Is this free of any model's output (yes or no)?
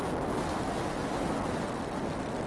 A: yes